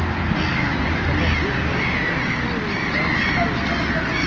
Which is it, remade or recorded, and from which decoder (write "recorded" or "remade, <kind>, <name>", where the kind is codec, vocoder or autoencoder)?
recorded